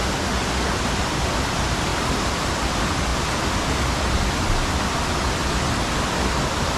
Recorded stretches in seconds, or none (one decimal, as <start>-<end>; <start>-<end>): 0.0-1.9; 2.5-6.8